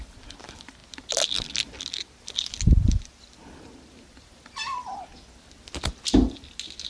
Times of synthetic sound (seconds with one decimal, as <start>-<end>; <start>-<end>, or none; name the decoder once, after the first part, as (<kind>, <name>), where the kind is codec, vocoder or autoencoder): none